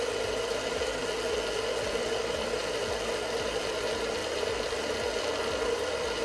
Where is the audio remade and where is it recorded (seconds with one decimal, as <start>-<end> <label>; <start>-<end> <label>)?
0.0-1.0 remade; 1.0-1.9 recorded; 1.9-2.6 remade; 2.6-3.7 recorded; 3.7-4.2 remade; 4.2-5.2 recorded; 5.2-6.2 remade